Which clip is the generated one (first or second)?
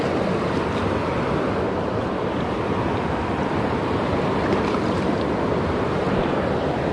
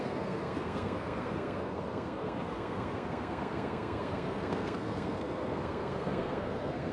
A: second